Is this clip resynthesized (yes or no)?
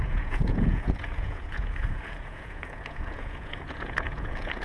yes